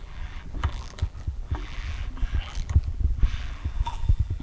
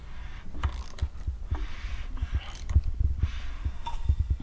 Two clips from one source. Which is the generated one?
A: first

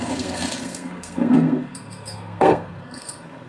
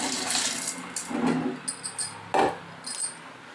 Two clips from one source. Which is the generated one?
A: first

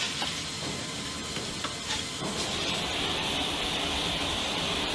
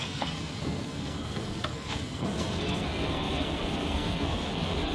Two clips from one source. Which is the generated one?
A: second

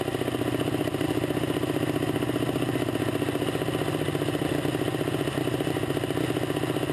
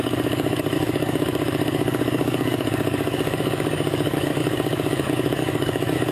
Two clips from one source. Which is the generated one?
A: second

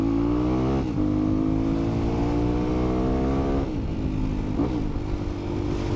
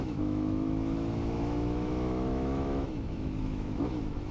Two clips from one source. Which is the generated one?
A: second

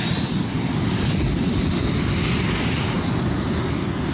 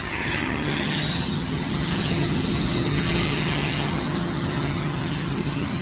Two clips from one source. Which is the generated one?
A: second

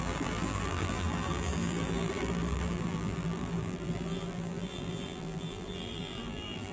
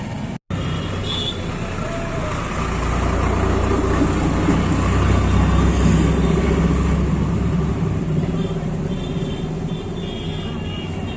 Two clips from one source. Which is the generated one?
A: first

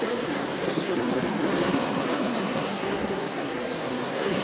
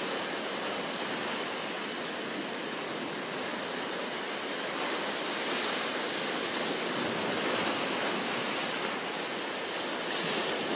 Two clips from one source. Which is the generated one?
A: first